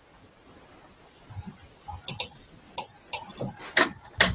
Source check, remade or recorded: recorded